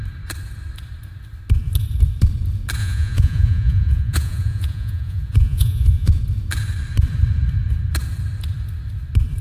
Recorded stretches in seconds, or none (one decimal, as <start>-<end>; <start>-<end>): 0.0-2.8; 6.2-9.4